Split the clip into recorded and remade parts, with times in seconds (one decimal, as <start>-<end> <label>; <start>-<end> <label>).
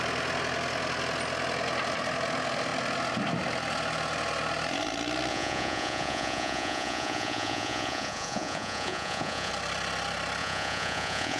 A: 0.0-5.3 recorded; 5.3-9.5 remade; 9.5-10.4 recorded; 10.4-11.4 remade